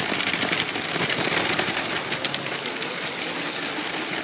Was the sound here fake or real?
real